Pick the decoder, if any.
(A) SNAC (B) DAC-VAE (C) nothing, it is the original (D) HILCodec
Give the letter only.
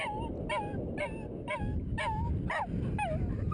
C